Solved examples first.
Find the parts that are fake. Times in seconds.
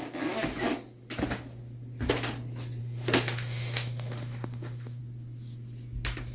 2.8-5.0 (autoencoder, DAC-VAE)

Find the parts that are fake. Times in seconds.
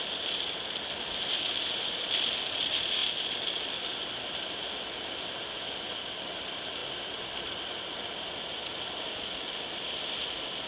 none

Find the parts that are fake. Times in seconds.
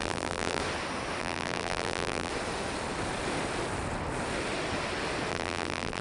0.0-0.6 (vocoder, BigVGAN v2); 1.2-2.3; 5.3-6.0